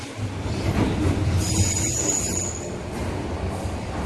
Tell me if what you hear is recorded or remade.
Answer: recorded